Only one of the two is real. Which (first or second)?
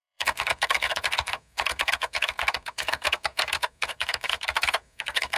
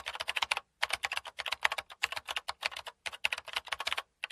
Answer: second